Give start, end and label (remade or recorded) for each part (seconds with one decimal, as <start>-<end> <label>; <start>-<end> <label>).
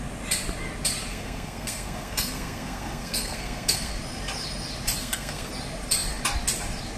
0.0-1.1 recorded; 1.1-3.9 remade; 3.9-5.0 recorded; 5.0-5.5 remade; 5.5-7.0 recorded